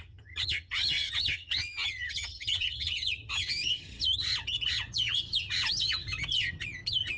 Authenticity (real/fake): fake